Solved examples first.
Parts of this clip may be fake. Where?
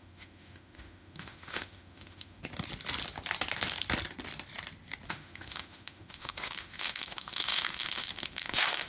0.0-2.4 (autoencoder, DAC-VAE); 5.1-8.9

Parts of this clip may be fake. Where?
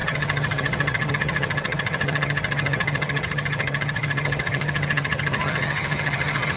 0.0-6.6 (vocoder, HiFi-GAN)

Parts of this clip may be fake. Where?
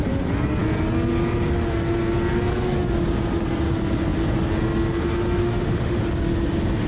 5.4-6.0 (autoencoder, DAC-VAE)